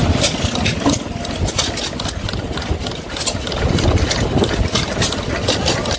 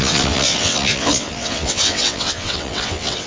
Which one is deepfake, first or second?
second